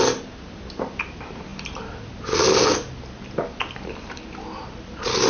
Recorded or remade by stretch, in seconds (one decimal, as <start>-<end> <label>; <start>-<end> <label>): 0.0-5.3 recorded